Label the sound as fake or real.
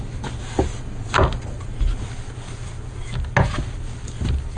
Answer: real